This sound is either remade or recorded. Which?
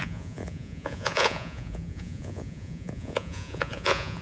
remade